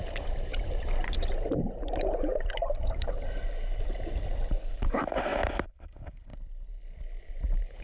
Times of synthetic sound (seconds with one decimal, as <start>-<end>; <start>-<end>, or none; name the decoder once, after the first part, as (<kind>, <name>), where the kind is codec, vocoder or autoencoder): 0.0-0.5 (vocoder, BigVGAN v2); 1.1-2.3; 4.7-5.3; 5.8-6.3; 7.3-7.8